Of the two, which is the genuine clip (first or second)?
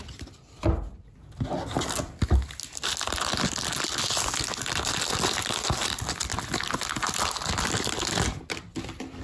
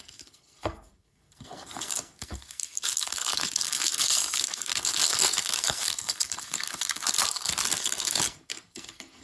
first